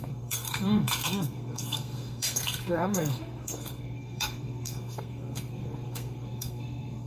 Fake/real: fake